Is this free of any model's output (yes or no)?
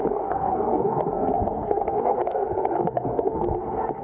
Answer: no